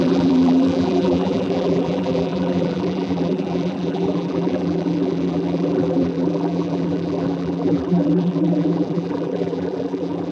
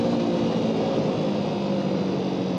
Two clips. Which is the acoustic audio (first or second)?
second